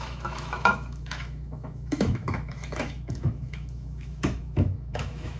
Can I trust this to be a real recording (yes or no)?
no